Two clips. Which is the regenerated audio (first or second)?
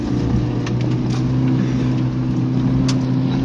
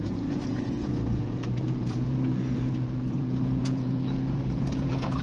second